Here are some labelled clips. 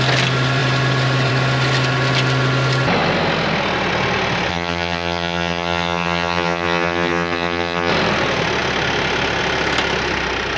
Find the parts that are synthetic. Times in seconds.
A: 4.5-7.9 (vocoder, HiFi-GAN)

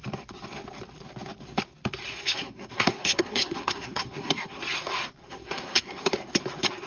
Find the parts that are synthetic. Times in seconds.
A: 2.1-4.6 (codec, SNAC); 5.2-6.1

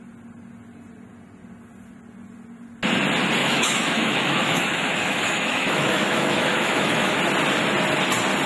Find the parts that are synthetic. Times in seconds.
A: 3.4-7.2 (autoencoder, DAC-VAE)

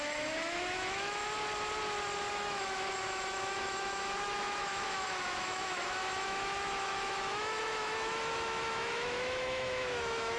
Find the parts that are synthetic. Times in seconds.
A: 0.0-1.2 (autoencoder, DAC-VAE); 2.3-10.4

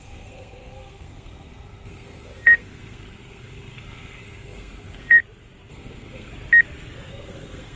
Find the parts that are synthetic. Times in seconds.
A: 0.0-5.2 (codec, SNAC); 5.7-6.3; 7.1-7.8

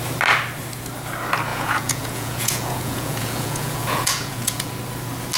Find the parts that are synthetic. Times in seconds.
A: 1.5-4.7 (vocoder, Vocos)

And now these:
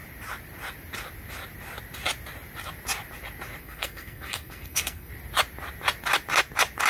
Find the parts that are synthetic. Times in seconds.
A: 3.6-5.1 (codec, SNAC)

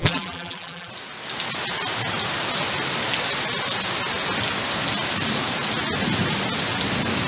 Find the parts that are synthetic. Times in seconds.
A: 0.0-0.9 (vocoder, BigVGAN v2)